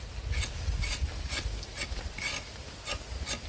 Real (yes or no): yes